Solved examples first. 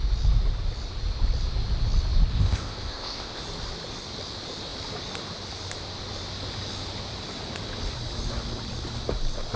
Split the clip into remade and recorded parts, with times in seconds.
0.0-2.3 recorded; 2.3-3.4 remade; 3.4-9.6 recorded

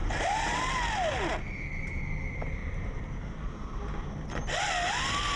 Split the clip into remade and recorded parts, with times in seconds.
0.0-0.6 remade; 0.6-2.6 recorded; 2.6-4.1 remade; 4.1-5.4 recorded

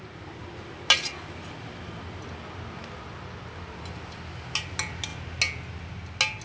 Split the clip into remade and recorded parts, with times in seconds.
0.0-6.4 recorded

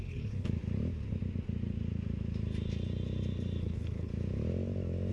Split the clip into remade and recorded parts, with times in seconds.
0.0-0.5 remade; 0.5-3.6 recorded; 3.6-4.1 remade; 4.1-5.1 recorded

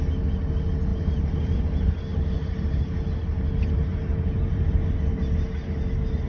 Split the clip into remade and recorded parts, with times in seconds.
0.0-0.9 recorded; 0.9-2.0 remade; 2.0-6.3 recorded

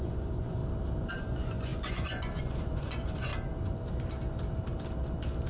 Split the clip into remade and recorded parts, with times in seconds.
0.0-0.6 remade; 0.6-1.1 recorded; 1.1-3.3 remade; 3.3-5.5 recorded